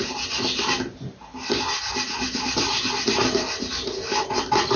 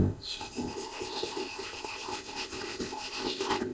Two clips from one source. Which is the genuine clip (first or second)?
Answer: first